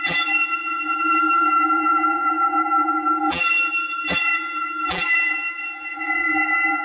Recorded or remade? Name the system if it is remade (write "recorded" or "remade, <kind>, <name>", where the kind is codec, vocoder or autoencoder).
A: remade, vocoder, BigVGAN v2